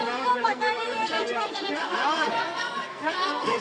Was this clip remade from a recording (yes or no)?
yes